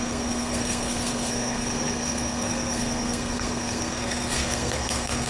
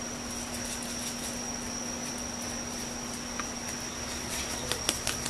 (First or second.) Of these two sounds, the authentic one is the second